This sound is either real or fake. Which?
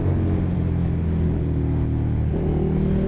real